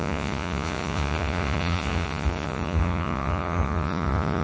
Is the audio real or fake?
fake